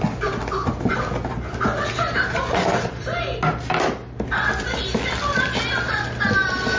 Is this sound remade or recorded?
recorded